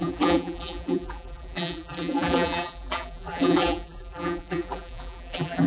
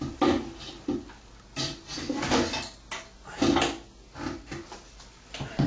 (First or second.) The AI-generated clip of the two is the first